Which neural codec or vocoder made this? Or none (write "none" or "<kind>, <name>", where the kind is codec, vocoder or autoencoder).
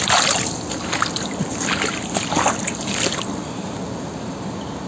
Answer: none